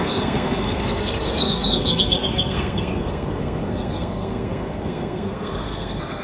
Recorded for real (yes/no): no